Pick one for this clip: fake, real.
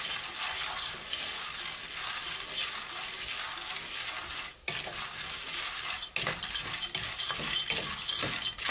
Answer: real